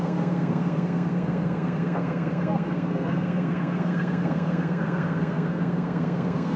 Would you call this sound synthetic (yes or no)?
yes